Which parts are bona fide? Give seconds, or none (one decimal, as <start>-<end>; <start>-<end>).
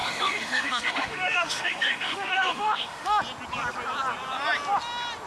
3.2-5.3